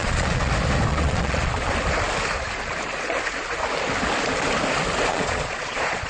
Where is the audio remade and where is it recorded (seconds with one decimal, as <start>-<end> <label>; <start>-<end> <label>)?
0.0-0.5 remade; 0.5-0.9 recorded; 0.9-1.7 remade; 1.7-5.1 recorded; 5.1-6.1 remade